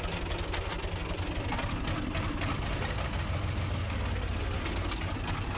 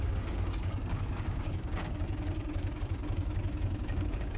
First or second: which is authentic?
first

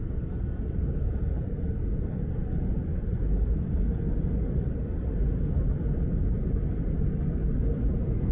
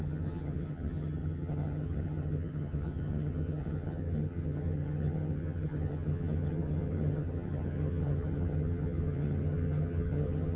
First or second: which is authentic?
first